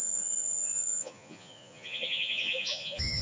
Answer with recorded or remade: remade